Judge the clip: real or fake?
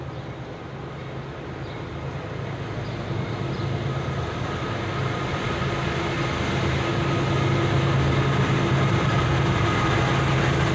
real